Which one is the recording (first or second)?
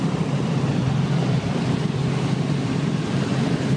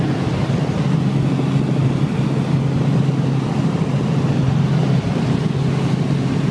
second